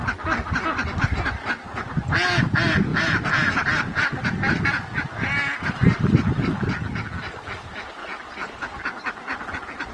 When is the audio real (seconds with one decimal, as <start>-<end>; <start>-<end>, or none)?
0.0-2.9; 3.8-8.0; 8.9-9.9